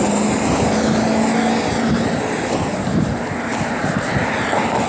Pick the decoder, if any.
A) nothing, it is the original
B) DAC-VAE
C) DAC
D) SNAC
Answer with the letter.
A